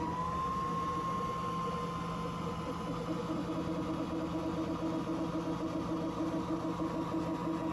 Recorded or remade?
recorded